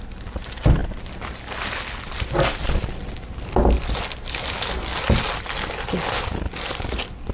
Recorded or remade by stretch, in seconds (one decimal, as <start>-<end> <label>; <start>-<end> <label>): 0.0-7.3 recorded